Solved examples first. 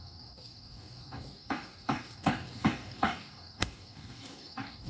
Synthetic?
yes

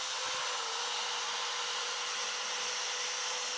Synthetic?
no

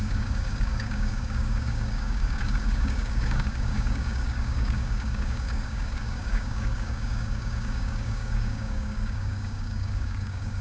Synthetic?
yes